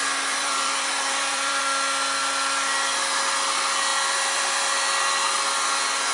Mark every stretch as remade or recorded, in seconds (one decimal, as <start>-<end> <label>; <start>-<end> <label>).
0.0-0.4 recorded; 0.4-1.6 remade; 1.6-3.9 recorded; 3.9-4.6 remade; 4.6-6.1 recorded